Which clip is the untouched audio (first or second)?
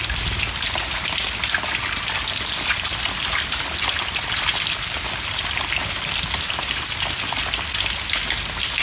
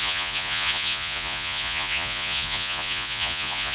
first